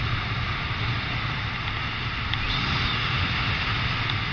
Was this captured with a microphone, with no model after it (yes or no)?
yes